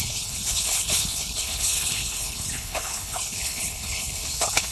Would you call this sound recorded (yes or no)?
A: no